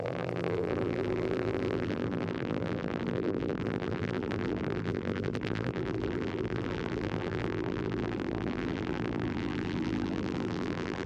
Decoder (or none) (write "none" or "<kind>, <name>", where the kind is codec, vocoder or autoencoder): vocoder, BigVGAN v2